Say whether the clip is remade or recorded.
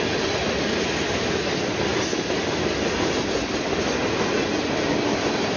recorded